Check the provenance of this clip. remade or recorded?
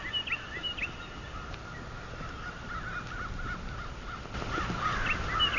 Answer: recorded